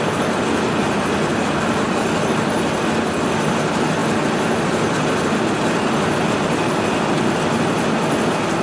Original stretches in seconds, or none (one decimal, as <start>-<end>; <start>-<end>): 0.0-8.6